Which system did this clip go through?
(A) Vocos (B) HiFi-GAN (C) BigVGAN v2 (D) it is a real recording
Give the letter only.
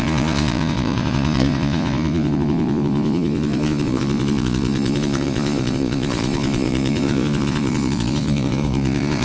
A